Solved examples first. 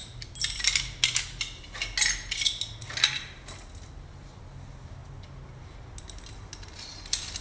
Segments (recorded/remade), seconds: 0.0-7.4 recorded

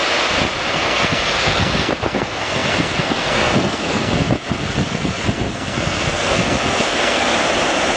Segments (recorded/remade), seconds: 0.0-0.7 recorded; 0.7-7.3 remade; 7.3-8.0 recorded

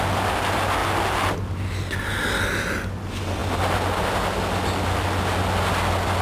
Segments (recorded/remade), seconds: 0.0-6.2 recorded